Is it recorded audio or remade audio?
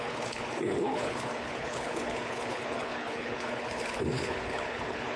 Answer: remade